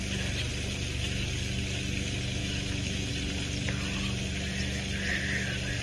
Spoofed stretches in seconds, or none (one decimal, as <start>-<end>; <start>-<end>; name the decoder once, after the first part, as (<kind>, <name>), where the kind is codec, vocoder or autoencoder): 2.4-3.1 (autoencoder, DAC-VAE)